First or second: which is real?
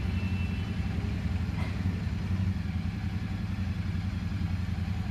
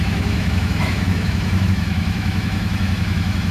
first